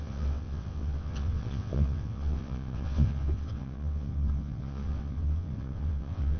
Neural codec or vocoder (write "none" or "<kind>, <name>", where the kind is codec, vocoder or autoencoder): vocoder, WaveNeXt